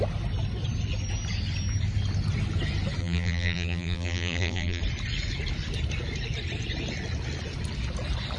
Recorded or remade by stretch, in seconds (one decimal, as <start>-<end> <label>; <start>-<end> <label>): 0.0-3.0 recorded; 3.0-4.8 remade; 4.8-8.4 recorded